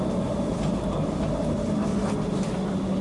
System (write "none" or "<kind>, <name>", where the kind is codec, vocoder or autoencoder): none